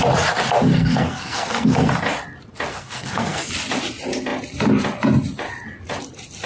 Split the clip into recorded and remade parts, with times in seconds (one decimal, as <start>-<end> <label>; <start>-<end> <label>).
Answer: 0.0-0.7 recorded; 0.7-1.9 remade; 1.9-2.7 recorded; 2.7-3.5 remade; 3.5-6.5 recorded